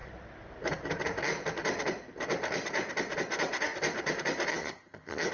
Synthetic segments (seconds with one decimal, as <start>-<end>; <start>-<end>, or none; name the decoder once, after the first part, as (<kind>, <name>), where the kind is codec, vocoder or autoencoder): 4.5-5.3 (vocoder, HiFi-GAN)